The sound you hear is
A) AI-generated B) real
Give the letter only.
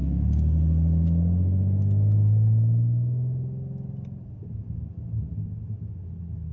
B